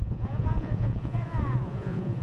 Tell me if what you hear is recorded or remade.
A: remade